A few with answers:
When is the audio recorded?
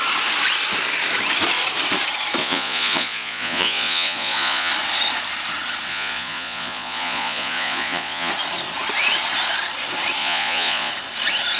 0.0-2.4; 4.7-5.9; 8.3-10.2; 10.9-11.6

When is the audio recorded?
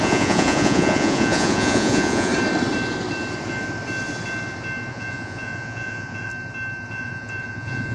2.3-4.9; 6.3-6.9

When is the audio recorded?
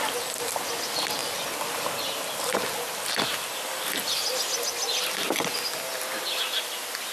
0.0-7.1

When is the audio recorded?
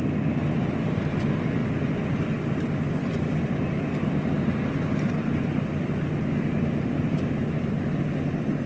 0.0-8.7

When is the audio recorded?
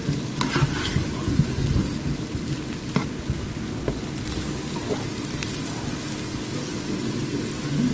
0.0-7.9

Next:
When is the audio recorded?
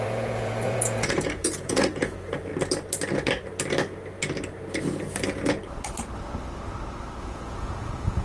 2.5-7.2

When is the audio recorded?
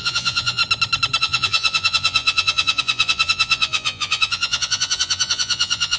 0.6-1.2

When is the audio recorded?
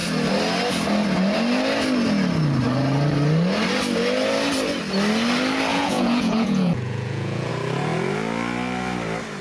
0.0-5.7; 7.5-9.4